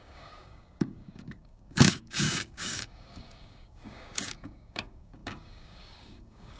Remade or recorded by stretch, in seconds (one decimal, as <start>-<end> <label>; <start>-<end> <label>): 0.0-6.6 remade